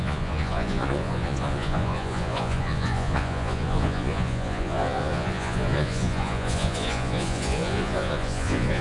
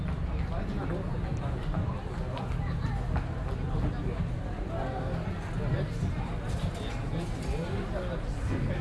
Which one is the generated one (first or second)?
first